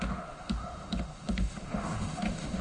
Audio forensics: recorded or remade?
remade